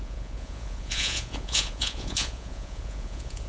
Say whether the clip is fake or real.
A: fake